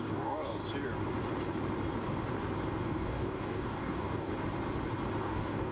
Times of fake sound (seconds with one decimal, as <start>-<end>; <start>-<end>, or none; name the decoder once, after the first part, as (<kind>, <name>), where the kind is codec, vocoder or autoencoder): 0.0-0.6 (codec, DAC); 2.8-4.3; 5.2-5.7

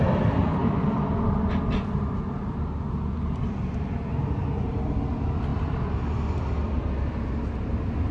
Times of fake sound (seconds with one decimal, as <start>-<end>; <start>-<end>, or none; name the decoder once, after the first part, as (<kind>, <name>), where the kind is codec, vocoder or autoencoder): none

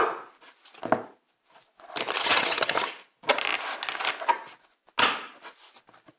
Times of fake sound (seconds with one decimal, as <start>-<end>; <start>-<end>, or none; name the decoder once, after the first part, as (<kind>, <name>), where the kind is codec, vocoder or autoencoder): 2.2-2.9 (vocoder, HiFi-GAN)

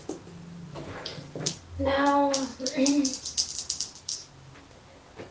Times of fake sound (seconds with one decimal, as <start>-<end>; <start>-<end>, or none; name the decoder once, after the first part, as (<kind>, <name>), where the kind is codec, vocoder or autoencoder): none

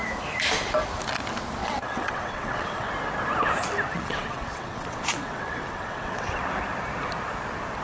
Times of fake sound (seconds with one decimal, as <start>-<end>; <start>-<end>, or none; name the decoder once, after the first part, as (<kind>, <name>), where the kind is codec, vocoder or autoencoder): 1.6-2.9 (vocoder, WaveNeXt); 3.9-6.4

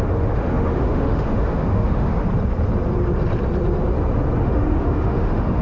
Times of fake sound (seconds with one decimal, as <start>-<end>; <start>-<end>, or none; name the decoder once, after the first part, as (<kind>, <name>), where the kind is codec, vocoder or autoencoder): 0.0-2.1 (autoencoder, DAC-VAE); 4.4-5.6